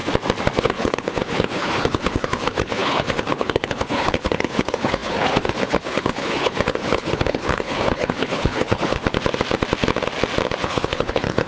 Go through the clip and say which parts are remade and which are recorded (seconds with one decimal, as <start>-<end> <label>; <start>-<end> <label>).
0.0-0.6 recorded; 0.6-9.0 remade; 9.0-10.6 recorded; 10.6-11.5 remade

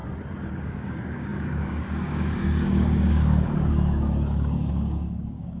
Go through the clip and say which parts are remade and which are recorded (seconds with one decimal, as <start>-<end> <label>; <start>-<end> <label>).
0.0-0.5 recorded; 0.5-5.6 remade

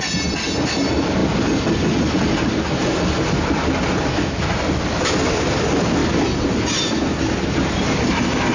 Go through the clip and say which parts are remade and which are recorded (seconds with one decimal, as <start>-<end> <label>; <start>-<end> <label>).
0.0-8.5 recorded

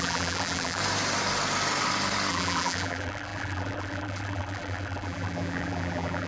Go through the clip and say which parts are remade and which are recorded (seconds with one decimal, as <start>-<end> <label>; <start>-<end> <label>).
0.0-0.8 remade; 0.8-2.3 recorded; 2.3-6.3 remade

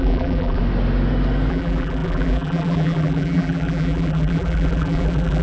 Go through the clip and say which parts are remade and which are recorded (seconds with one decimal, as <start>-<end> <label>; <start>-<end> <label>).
0.0-0.6 remade; 0.6-1.5 recorded; 1.5-5.4 remade